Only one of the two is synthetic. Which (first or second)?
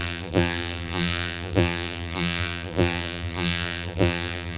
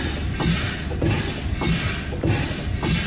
first